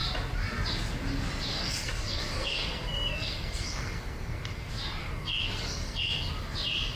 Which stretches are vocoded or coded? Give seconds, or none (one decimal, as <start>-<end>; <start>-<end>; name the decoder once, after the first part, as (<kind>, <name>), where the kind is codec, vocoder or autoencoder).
1.5-4.6 (codec, SNAC); 5.0-6.3